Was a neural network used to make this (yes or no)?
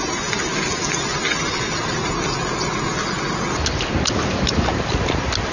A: no